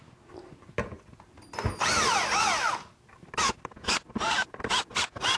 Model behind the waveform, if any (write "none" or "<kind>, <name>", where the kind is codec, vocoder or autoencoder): none